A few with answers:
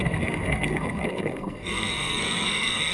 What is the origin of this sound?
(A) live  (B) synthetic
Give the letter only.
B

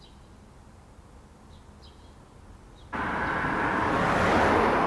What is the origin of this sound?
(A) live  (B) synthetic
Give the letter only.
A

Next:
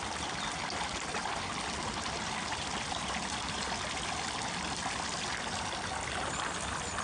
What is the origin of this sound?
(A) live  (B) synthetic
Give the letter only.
A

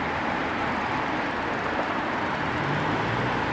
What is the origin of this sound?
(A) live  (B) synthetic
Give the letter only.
A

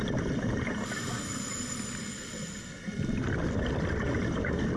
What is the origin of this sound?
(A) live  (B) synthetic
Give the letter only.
A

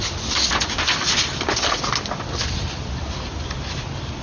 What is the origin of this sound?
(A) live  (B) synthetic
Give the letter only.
A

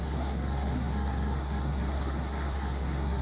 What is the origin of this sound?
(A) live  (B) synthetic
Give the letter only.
B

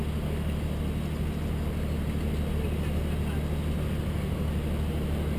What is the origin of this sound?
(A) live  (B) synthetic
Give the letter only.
A